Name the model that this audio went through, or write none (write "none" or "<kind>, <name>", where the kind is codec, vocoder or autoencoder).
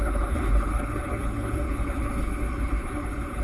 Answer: codec, HILCodec